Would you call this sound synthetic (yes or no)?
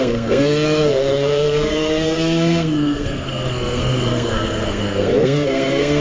yes